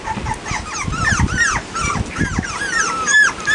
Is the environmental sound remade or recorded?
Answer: recorded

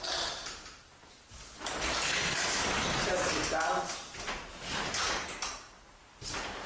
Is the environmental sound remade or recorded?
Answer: recorded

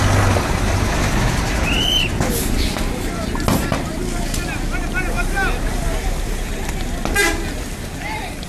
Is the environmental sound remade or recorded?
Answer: recorded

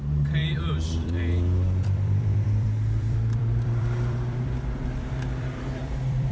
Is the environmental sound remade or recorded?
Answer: remade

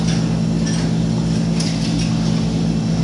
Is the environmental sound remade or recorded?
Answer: recorded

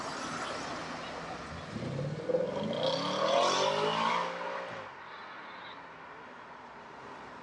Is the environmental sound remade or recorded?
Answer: recorded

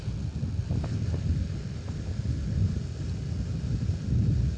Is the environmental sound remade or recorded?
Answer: recorded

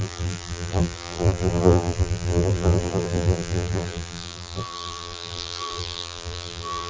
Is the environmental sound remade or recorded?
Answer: remade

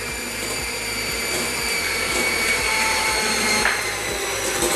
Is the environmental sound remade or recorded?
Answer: remade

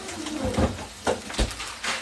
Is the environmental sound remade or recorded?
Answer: recorded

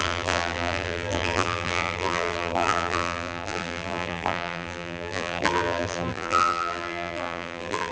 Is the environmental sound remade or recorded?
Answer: remade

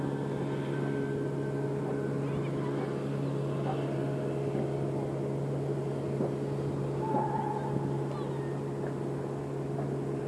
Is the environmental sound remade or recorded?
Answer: recorded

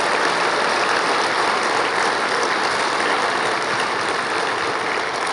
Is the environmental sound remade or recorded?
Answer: recorded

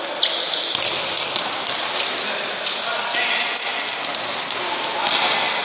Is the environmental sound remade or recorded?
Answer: recorded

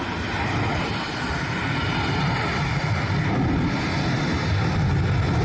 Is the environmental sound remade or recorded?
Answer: recorded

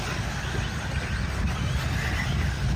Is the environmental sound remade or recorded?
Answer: recorded